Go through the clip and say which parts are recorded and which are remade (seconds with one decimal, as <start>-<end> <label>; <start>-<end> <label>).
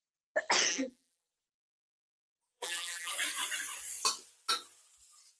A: 0.0-0.7 recorded; 0.7-3.1 remade; 3.1-5.4 recorded